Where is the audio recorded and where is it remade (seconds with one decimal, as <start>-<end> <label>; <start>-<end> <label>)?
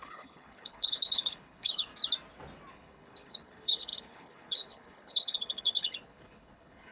0.0-1.9 remade; 1.9-2.7 recorded; 2.7-6.9 remade